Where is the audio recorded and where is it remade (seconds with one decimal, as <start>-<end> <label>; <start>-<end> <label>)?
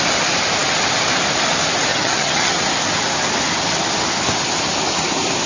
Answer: 0.0-1.9 recorded; 1.9-2.5 remade; 2.5-5.5 recorded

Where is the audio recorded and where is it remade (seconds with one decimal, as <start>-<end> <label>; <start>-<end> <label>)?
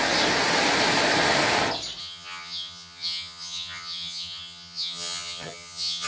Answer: 0.0-2.0 recorded; 2.0-6.1 remade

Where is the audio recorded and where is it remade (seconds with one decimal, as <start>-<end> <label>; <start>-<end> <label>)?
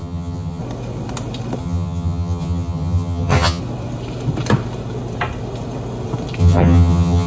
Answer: 0.0-0.6 remade; 0.6-1.6 recorded; 1.6-3.6 remade; 3.6-6.4 recorded; 6.4-7.3 remade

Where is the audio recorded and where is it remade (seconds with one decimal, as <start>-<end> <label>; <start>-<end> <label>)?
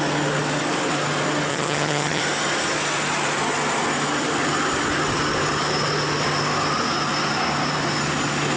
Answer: 0.0-1.5 recorded; 1.5-2.2 remade; 2.2-8.6 recorded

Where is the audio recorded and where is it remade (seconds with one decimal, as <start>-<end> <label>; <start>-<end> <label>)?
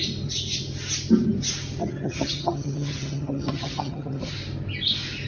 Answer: 0.0-1.8 recorded; 1.8-4.3 remade; 4.3-5.3 recorded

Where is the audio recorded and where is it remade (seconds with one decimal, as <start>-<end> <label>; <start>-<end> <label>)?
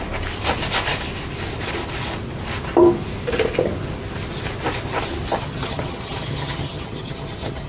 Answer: 0.0-5.3 recorded; 5.3-7.7 remade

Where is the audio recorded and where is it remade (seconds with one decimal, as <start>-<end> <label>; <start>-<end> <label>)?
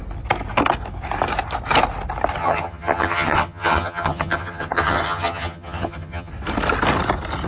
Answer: 0.0-2.4 recorded; 2.4-6.3 remade; 6.3-7.5 recorded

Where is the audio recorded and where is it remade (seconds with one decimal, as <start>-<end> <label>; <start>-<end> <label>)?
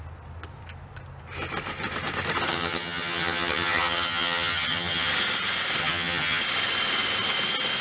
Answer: 0.0-2.5 recorded; 2.5-5.1 remade; 5.1-5.8 recorded; 5.8-6.4 remade; 6.4-7.8 recorded